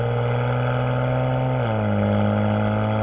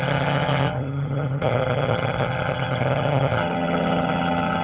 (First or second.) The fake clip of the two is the second